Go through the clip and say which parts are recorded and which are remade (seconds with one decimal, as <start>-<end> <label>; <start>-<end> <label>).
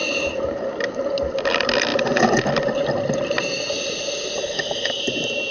0.0-0.7 remade; 0.7-5.5 recorded